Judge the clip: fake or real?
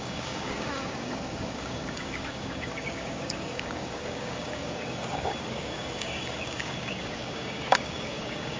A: fake